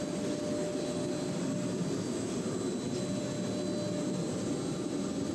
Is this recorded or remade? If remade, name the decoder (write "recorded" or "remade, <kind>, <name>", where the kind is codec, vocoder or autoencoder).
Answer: recorded